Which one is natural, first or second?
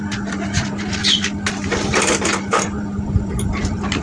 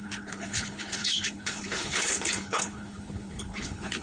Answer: first